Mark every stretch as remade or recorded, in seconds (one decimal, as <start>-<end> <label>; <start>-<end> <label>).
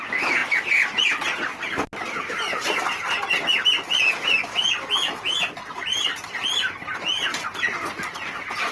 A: 0.0-8.7 recorded